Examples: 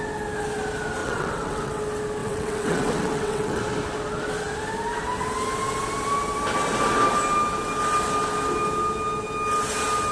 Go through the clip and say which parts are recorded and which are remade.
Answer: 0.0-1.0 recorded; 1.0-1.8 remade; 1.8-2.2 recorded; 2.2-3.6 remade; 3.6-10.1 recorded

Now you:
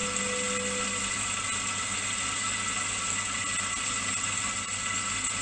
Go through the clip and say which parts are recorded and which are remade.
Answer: 0.0-5.4 recorded

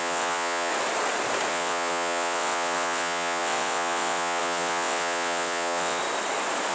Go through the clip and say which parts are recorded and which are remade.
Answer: 0.0-0.7 remade; 0.7-1.5 recorded; 1.5-6.0 remade; 6.0-6.7 recorded

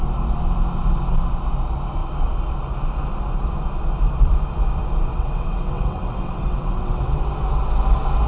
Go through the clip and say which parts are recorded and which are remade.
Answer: 0.0-5.1 recorded; 5.1-7.2 remade; 7.2-8.3 recorded

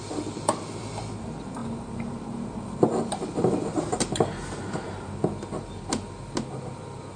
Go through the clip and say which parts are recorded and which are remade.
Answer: 0.0-7.2 recorded

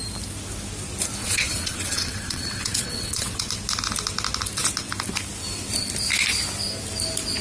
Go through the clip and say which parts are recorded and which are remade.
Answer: 0.0-1.2 recorded; 1.2-3.5 remade; 3.5-7.4 recorded